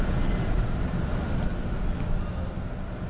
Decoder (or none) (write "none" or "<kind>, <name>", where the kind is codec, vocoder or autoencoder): none